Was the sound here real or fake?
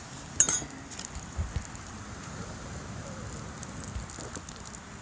real